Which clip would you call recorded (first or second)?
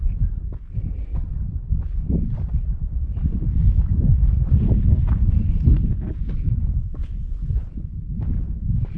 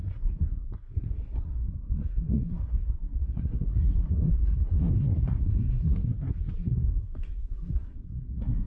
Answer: first